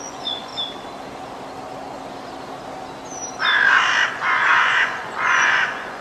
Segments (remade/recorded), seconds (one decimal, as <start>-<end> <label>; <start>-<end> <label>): 0.0-0.5 remade; 0.5-4.1 recorded; 4.1-6.0 remade